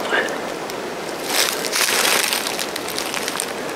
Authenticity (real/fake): real